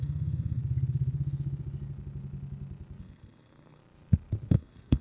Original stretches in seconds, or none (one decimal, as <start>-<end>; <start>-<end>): 0.6-3.0; 3.8-4.5